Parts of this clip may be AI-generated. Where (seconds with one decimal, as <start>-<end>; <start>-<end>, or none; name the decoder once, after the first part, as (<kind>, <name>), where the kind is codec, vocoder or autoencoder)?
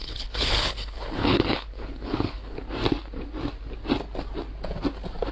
0.0-2.6 (codec, HILCodec)